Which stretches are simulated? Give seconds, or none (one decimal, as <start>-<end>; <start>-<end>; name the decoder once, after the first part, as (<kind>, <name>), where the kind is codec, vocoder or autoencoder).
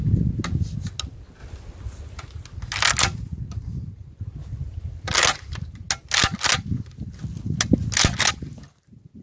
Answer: none